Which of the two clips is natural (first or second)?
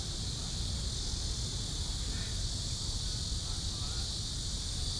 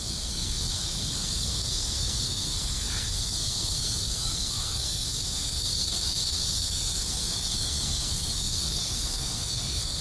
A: first